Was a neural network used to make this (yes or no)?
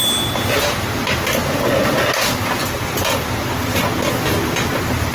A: no